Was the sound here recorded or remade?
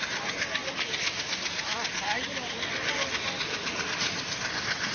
recorded